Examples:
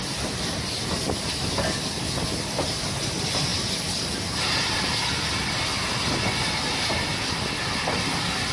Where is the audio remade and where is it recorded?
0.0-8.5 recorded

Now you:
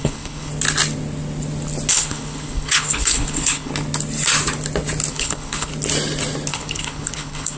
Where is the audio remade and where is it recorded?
0.0-0.5 remade; 0.5-1.9 recorded; 1.9-3.7 remade; 3.7-5.1 recorded; 5.1-5.7 remade; 5.7-6.5 recorded; 6.5-7.6 remade

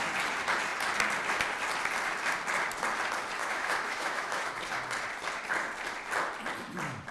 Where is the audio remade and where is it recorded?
0.0-3.4 recorded; 3.4-4.5 remade; 4.5-7.1 recorded

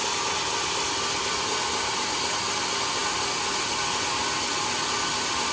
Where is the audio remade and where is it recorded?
0.0-5.5 recorded

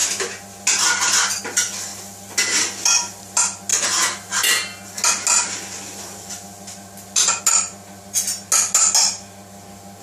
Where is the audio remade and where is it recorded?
0.0-10.0 recorded

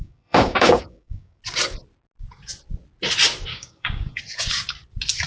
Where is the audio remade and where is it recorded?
0.0-1.4 remade; 1.4-3.5 recorded; 3.5-4.2 remade; 4.2-5.3 recorded